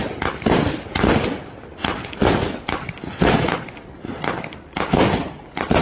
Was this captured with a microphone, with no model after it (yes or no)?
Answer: yes